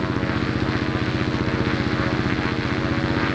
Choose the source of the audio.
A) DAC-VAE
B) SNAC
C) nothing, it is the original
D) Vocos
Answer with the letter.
C